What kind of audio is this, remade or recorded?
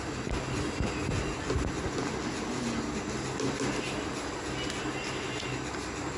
recorded